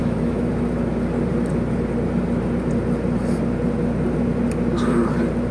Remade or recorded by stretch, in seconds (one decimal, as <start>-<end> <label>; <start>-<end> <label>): 0.0-0.5 remade; 0.5-5.5 recorded